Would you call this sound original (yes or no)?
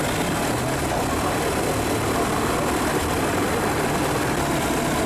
yes